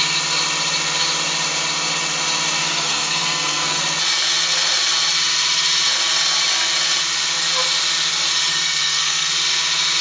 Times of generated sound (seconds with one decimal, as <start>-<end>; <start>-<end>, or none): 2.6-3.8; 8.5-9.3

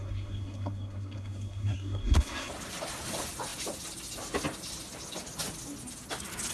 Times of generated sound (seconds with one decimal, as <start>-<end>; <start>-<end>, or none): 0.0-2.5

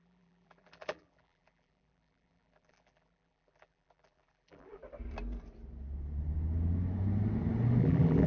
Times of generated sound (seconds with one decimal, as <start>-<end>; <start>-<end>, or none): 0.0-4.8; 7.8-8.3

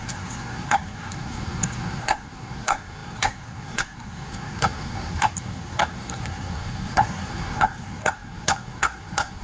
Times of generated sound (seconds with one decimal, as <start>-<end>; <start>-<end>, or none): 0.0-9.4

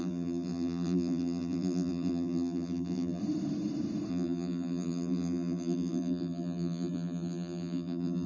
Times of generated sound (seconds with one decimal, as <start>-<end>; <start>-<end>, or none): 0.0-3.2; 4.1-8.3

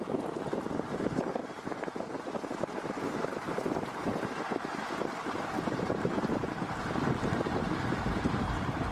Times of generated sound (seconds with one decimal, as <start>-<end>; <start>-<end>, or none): 1.4-2.2; 3.3-8.2

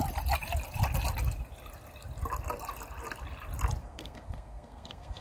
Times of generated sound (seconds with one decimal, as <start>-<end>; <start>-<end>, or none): 3.8-5.2

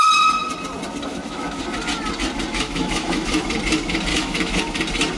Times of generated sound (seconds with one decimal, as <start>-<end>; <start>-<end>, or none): 1.1-1.6; 2.5-3.5; 4.1-4.6